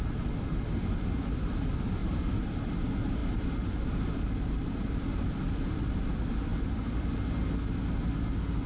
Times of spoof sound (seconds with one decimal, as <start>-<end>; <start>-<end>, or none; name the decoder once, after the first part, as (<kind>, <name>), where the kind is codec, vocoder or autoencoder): 2.0-2.7 (vocoder, BigVGAN v2); 3.2-5.8; 6.5-7.1